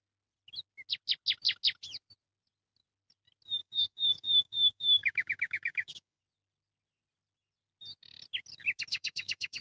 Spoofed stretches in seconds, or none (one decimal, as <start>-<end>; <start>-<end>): 3.6-6.2; 8.9-9.6